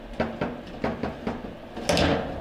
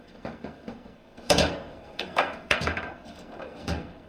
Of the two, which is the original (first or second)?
first